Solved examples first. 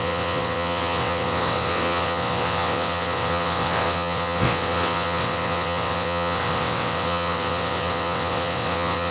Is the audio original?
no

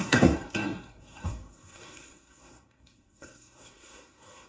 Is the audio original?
no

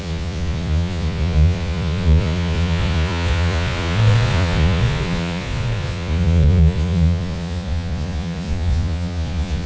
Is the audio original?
no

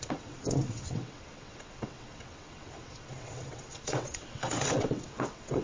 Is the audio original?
no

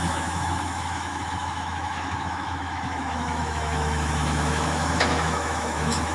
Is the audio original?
no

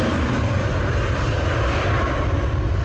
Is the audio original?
yes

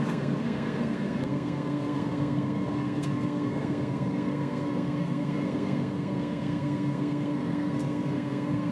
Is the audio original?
no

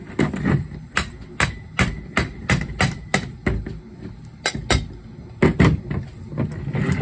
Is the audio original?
yes